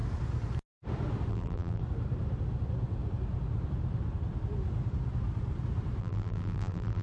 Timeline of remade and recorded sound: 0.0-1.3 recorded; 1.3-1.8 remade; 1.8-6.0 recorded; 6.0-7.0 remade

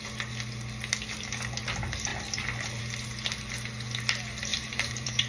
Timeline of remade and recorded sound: 0.0-4.5 recorded; 4.5-5.3 remade

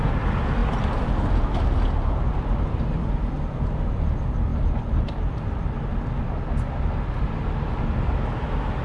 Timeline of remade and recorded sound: 0.0-4.5 recorded; 4.5-5.3 remade; 5.3-8.8 recorded

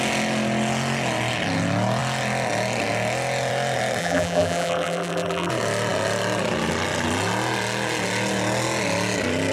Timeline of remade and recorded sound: 0.0-4.0 recorded; 4.0-5.5 remade; 5.5-9.5 recorded

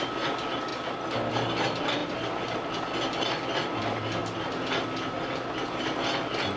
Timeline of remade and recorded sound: 0.0-2.0 recorded; 2.0-2.7 remade; 2.7-6.6 recorded

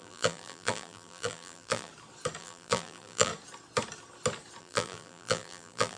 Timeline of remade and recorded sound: 0.0-1.9 remade; 1.9-2.4 recorded; 2.4-3.3 remade; 3.3-4.6 recorded; 4.6-6.0 remade